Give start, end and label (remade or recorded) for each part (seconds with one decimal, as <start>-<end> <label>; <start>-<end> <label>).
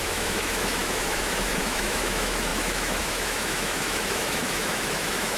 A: 0.0-5.4 remade